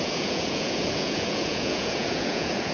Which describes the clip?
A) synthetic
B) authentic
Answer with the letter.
A